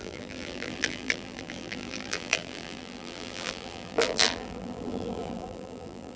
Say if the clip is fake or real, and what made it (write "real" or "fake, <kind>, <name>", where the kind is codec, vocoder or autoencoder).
fake, vocoder, BigVGAN v2